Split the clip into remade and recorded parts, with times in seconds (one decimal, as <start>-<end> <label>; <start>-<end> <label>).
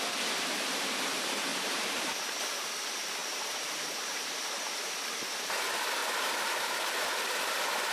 0.0-1.5 recorded; 1.5-2.4 remade; 2.4-3.2 recorded; 3.2-4.8 remade; 4.8-6.0 recorded; 6.0-6.9 remade; 6.9-7.9 recorded